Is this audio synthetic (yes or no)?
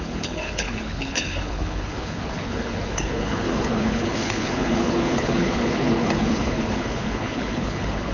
yes